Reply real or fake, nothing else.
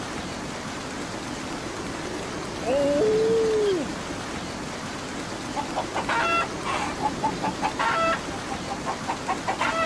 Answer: real